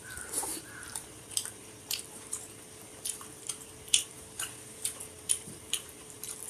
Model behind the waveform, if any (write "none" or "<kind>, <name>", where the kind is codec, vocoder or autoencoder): vocoder, BigVGAN v2